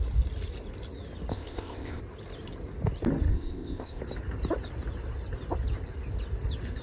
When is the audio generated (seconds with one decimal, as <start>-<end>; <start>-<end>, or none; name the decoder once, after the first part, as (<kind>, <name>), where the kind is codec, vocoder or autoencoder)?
1.3-2.0 (codec, ZipCodec); 3.3-4.0